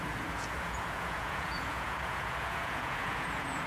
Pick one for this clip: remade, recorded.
remade